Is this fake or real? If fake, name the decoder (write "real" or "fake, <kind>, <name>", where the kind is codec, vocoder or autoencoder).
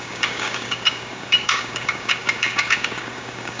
fake, codec, DAC